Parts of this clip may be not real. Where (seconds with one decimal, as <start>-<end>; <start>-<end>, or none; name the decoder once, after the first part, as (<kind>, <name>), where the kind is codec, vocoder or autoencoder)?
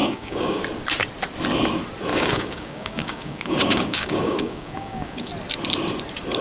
0.0-0.6 (codec, DAC); 2.1-5.3